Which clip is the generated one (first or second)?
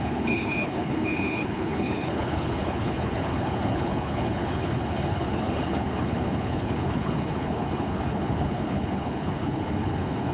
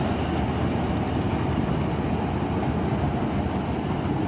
first